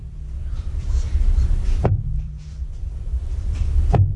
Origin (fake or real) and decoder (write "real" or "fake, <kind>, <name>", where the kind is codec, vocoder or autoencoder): fake, vocoder, BigVGAN v2